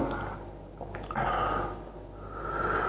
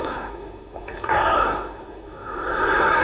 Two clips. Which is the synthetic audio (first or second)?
second